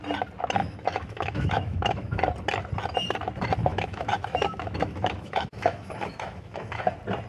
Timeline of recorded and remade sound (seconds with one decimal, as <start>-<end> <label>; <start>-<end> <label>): 0.0-0.6 recorded; 0.6-2.2 remade; 2.2-3.7 recorded; 3.7-6.8 remade; 6.8-7.3 recorded